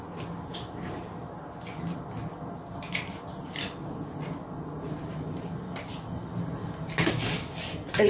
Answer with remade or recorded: recorded